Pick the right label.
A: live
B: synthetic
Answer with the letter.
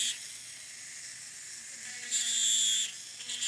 A